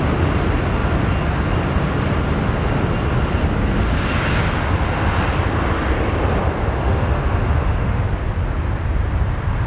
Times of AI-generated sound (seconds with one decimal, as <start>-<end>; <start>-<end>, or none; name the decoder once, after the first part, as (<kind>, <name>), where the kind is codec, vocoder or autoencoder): 6.6-8.0 (autoencoder, DAC-VAE)